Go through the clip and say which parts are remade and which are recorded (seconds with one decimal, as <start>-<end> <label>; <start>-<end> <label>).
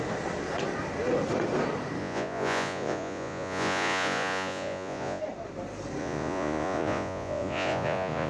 0.0-2.0 recorded; 2.0-5.2 remade; 5.2-6.0 recorded; 6.0-8.3 remade